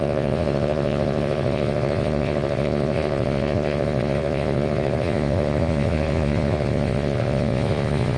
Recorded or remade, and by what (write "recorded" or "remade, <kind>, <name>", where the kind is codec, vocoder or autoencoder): remade, vocoder, Vocos